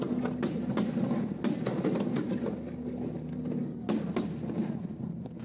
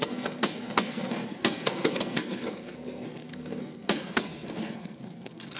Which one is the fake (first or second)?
second